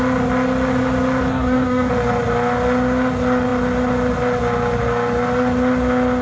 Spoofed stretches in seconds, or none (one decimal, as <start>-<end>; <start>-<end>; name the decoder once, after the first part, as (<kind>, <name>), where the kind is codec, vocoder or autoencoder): 1.3-1.9 (codec, DAC)